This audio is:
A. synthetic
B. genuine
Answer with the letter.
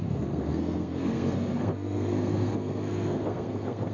A